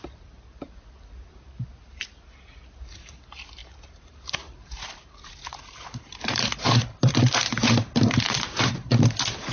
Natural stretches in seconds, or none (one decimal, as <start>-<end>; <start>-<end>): 0.0-3.6; 8.7-9.5